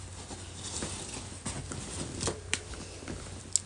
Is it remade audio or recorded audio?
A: recorded